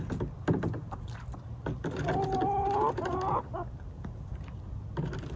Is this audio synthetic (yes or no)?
no